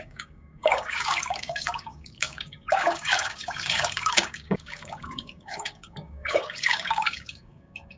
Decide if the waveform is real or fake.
fake